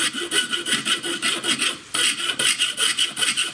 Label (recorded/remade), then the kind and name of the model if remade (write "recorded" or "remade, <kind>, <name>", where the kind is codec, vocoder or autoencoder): recorded